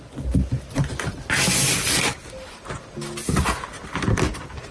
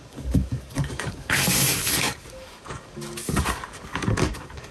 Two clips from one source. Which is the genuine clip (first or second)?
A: first